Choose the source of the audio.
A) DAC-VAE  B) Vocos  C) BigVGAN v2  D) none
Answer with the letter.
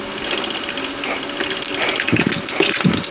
D